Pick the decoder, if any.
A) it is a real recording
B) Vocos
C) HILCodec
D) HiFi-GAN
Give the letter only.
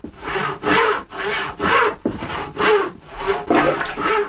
A